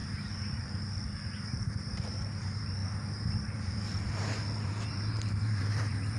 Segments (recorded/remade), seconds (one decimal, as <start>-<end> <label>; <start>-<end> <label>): 0.0-6.2 remade